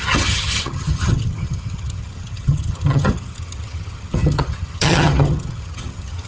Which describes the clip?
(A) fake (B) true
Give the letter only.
A